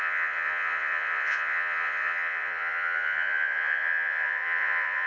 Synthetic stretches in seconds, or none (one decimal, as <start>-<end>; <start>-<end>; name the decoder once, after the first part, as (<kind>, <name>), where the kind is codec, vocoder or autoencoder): 0.0-5.1 (vocoder, Vocos)

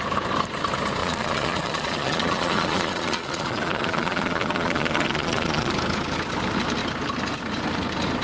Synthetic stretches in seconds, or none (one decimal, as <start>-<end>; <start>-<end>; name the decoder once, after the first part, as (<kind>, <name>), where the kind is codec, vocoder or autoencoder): 1.0-5.7 (vocoder, Vocos)

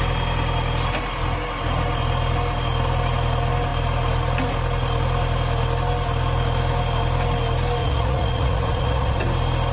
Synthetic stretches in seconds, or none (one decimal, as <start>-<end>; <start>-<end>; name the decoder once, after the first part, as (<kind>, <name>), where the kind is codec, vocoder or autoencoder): 7.8-9.2 (vocoder, Vocos)

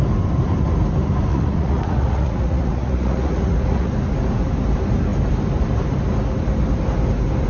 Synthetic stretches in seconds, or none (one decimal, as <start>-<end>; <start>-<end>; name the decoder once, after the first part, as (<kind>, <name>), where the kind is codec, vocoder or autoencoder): 1.3-3.9 (vocoder, Vocos)

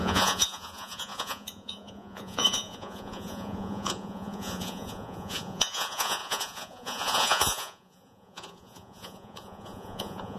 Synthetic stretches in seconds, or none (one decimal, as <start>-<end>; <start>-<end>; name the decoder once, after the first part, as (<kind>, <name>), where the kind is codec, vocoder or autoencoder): 0.0-10.4 (vocoder, Vocos)